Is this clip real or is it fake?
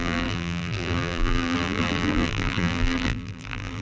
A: fake